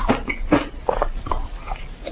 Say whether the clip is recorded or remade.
recorded